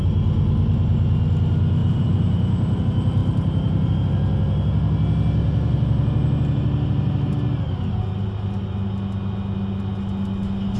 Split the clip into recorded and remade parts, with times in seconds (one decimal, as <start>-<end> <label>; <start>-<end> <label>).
0.0-1.8 recorded; 1.8-2.8 remade; 2.8-3.2 recorded; 3.2-3.9 remade; 3.9-5.4 recorded; 5.4-7.3 remade; 7.3-10.8 recorded